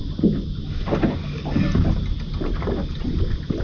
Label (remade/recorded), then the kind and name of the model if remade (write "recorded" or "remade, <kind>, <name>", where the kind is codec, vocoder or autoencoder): recorded